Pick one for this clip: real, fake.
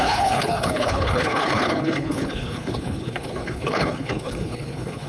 fake